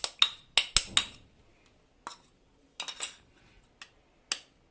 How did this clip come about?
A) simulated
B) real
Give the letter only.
B